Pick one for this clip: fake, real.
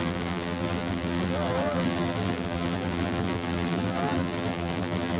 fake